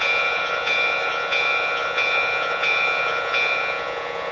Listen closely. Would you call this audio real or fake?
fake